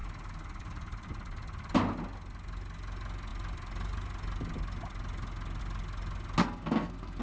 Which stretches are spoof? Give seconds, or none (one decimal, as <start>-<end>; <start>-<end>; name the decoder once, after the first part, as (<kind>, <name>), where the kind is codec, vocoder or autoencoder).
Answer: 6.4-7.2 (codec, SNAC)